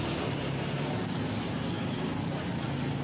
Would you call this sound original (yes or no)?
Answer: yes